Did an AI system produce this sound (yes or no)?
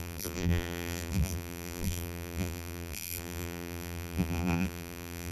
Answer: yes